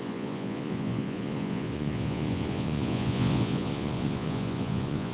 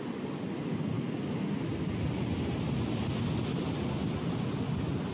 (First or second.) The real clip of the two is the second